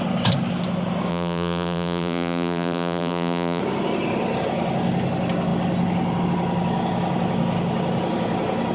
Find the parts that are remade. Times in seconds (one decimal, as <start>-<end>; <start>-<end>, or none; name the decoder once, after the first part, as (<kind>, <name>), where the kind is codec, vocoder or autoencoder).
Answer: 1.1-3.6 (vocoder, BigVGAN v2)